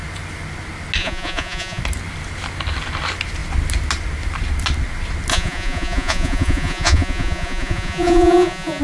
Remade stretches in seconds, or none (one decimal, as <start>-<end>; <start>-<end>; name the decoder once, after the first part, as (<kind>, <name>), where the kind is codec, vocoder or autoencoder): 1.0-1.8 (vocoder, Vocos); 5.3-8.8